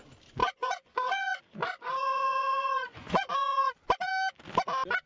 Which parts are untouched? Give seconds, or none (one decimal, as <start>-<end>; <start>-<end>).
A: 0.0-0.4; 1.4-2.0; 3.7-5.1